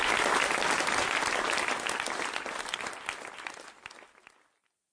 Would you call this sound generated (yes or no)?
no